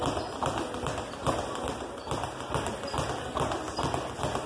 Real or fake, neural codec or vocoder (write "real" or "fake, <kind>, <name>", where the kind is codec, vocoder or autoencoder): real